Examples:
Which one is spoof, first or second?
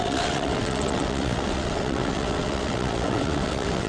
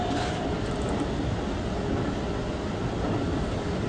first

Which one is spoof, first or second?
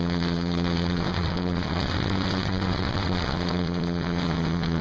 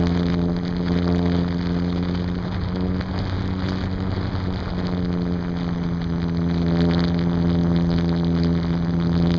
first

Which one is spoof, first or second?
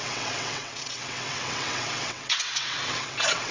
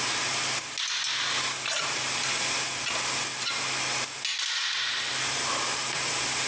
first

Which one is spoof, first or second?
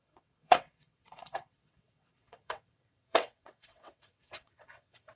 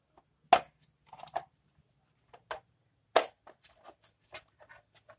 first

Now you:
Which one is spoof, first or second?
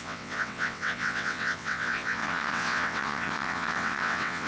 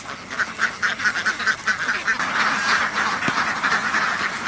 first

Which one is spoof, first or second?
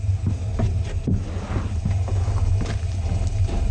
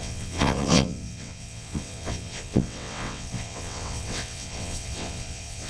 second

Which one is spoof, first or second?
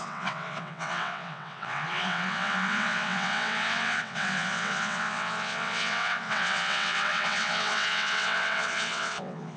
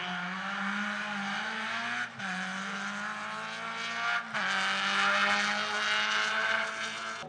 first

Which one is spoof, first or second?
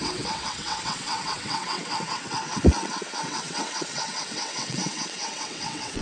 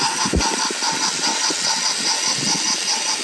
first